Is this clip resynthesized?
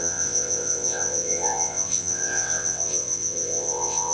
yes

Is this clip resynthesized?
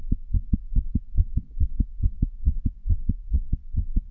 yes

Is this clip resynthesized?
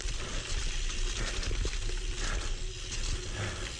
no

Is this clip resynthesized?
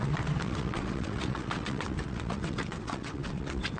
yes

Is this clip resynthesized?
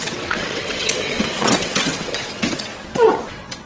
yes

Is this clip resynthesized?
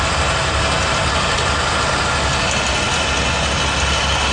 no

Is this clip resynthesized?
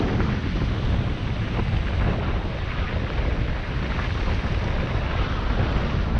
no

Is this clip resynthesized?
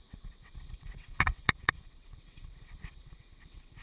yes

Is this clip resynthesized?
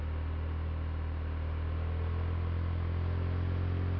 no